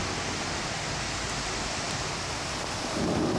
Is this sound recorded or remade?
recorded